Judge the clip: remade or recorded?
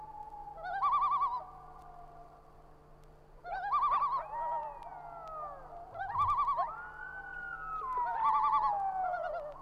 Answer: recorded